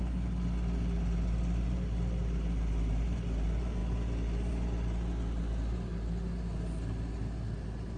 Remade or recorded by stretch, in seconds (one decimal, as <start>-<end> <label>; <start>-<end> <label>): 0.0-8.0 recorded